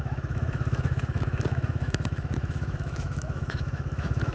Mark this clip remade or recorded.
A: remade